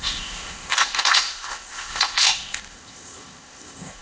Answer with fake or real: fake